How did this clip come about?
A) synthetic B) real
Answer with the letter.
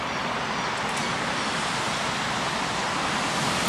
B